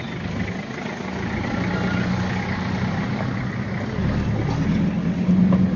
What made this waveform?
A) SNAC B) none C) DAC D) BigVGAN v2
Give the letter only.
B